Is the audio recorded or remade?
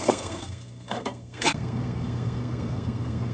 remade